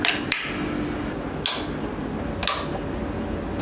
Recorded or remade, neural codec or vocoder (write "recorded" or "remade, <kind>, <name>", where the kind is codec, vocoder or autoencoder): recorded